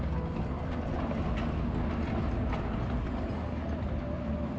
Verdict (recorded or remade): recorded